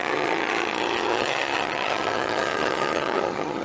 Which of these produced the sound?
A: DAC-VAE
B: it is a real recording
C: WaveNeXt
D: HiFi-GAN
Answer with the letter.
D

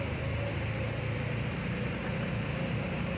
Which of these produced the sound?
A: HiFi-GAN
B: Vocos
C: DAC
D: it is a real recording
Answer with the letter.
D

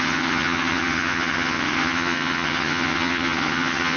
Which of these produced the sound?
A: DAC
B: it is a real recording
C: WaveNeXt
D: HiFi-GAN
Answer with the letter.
D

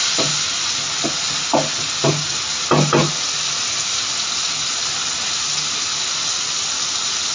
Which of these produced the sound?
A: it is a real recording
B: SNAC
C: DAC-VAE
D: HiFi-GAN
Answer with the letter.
A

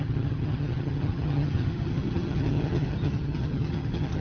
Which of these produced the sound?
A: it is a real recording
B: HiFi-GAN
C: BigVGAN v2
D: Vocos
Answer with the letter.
B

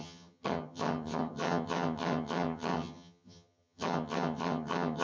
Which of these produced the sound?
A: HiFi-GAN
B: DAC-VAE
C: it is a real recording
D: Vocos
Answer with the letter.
A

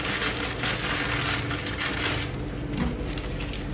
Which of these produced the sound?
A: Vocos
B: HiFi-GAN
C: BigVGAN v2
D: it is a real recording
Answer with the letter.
D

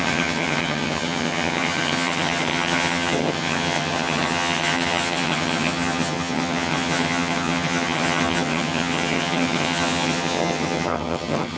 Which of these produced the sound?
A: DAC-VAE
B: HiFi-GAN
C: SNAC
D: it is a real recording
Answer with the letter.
B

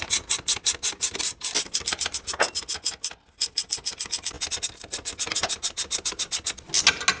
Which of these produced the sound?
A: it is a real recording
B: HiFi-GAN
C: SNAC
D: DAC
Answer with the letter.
A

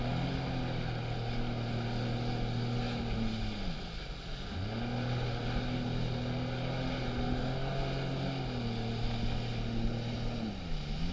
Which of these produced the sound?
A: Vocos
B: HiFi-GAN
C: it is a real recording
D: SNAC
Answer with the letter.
C